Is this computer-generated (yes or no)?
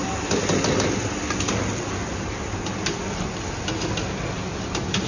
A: no